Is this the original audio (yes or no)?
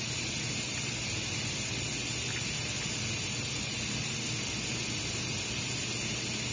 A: yes